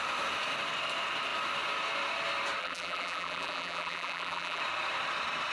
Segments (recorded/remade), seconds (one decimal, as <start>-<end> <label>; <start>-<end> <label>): 0.0-2.6 recorded; 2.6-4.6 remade; 4.6-5.5 recorded